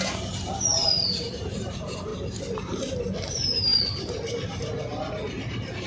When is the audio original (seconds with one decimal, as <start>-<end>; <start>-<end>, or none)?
0.0-5.9